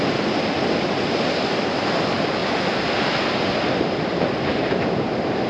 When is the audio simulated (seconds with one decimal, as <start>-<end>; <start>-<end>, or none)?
none